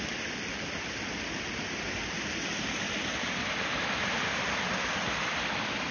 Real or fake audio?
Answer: real